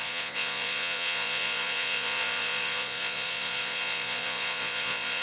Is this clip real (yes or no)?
no